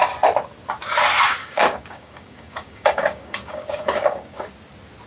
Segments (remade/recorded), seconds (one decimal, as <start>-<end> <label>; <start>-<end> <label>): 0.0-1.4 recorded; 1.4-4.5 remade; 4.5-5.1 recorded